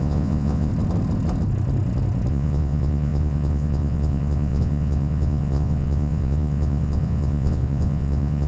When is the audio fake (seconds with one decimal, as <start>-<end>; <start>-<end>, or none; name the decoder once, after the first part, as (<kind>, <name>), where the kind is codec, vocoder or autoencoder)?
0.0-0.7 (vocoder, Vocos); 2.3-8.5

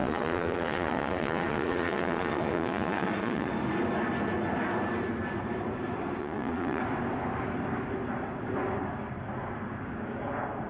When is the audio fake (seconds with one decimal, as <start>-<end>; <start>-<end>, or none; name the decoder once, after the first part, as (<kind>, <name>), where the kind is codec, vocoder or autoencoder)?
0.0-3.5 (vocoder, Vocos); 6.2-6.8